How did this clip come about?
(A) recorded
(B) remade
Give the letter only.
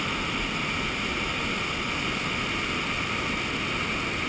A